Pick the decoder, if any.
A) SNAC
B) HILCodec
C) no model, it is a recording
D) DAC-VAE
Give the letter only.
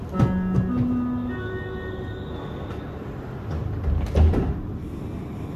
C